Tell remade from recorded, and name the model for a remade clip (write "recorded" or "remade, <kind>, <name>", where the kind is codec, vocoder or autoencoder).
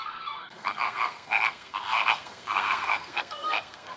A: remade, codec, SNAC